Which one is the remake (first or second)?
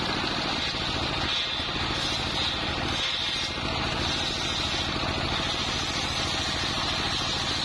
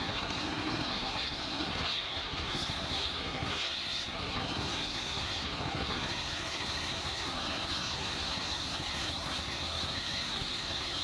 second